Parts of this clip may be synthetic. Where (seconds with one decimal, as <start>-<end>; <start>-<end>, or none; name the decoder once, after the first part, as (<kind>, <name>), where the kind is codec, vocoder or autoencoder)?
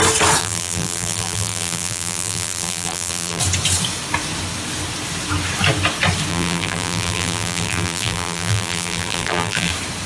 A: 0.4-3.4 (vocoder, BigVGAN v2); 6.3-9.7